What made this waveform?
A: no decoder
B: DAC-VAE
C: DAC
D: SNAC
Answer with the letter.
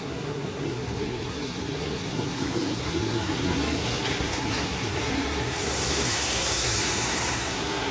D